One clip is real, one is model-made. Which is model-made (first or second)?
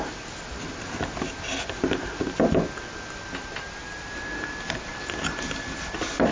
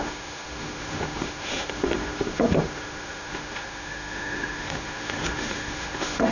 second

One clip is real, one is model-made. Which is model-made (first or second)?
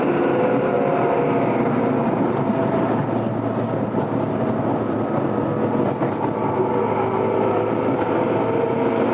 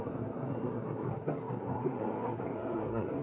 second